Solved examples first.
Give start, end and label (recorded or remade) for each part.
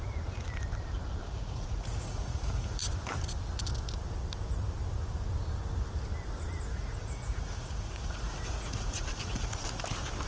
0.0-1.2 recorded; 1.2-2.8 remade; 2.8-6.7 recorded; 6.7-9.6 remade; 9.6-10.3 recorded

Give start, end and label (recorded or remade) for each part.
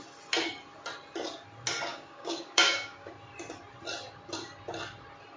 0.0-1.9 recorded; 1.9-3.1 remade; 3.1-5.4 recorded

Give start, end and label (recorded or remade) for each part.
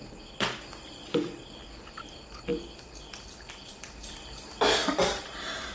0.0-5.7 recorded